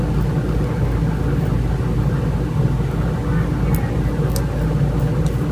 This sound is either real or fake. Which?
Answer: real